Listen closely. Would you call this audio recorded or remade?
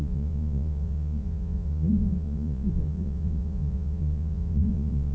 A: remade